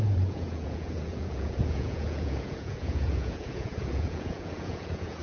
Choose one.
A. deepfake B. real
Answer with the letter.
A